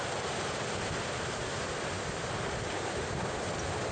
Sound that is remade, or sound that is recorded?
recorded